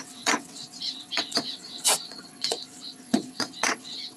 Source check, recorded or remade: remade